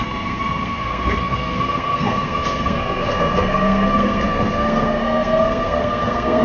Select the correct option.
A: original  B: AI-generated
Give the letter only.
B